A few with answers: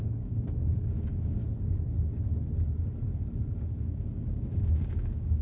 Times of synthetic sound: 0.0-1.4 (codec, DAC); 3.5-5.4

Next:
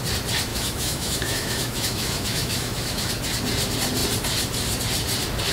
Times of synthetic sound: 0.5-3.1 (autoencoder, DAC-VAE)

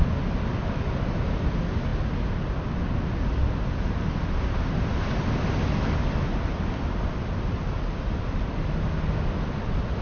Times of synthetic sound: none

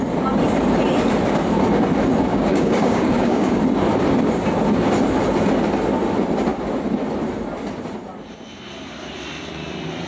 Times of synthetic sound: 2.3-3.6 (codec, DAC)

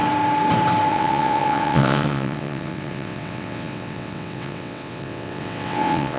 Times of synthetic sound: 0.9-6.2 (vocoder, WaveNeXt)

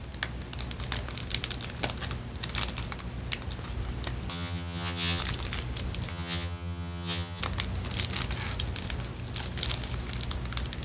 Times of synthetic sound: 4.3-5.2 (vocoder, HiFi-GAN); 6.1-7.4

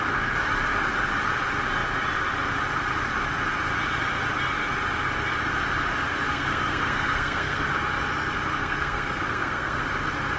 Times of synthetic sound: 6.3-7.7 (codec, SNAC); 8.5-9.8